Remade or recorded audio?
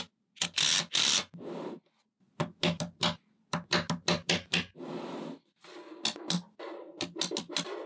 recorded